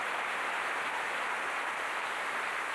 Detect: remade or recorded remade